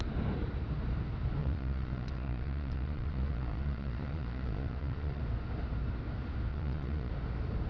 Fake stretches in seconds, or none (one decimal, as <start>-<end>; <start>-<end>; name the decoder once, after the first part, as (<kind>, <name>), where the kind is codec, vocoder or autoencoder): 1.4-5.2 (vocoder, Vocos); 6.5-7.1